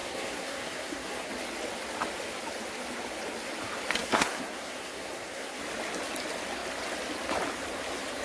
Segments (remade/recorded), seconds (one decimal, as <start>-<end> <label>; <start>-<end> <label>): 0.0-1.3 remade; 1.3-4.0 recorded; 4.0-5.6 remade; 5.6-8.2 recorded